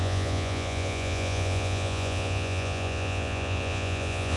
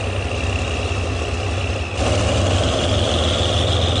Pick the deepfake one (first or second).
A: first